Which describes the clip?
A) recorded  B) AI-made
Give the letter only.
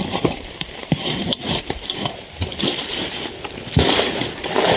B